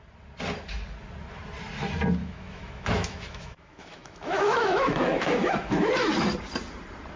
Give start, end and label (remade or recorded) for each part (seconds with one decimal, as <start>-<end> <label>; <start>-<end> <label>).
0.0-2.2 recorded; 2.2-5.9 remade; 5.9-7.2 recorded